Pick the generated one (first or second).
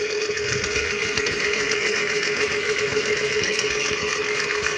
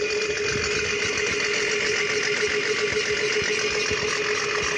first